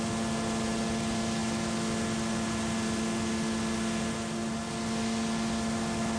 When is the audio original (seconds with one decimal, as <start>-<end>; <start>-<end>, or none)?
0.0-6.2